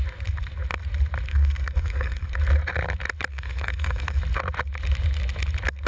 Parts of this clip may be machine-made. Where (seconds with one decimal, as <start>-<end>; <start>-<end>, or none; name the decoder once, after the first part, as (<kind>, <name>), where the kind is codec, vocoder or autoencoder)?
1.3-2.3 (codec, SNAC); 3.3-4.2